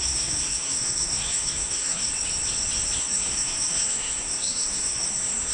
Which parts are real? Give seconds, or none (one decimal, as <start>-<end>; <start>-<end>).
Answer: 2.1-3.0